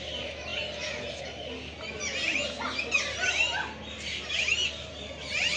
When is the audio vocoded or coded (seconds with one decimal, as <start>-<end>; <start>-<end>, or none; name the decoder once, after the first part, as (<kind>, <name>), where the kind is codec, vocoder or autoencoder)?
none